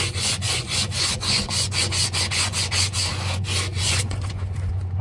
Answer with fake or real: fake